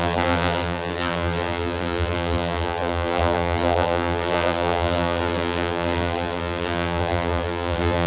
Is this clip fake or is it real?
fake